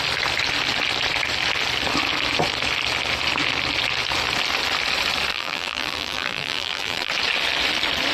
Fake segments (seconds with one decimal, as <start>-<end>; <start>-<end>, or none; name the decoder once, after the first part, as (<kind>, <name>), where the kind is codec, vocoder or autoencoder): 5.3-7.1 (vocoder, BigVGAN v2)